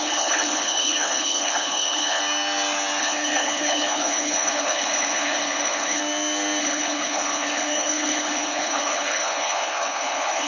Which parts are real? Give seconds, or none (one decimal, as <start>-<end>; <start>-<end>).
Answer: 2.2-3.0; 6.0-6.6